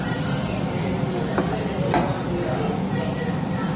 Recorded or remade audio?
recorded